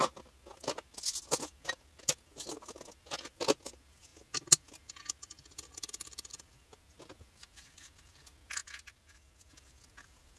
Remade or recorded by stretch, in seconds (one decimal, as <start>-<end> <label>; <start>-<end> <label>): 0.0-10.4 recorded